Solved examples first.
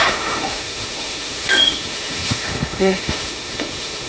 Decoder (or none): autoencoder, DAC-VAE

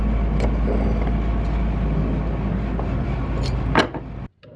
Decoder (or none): none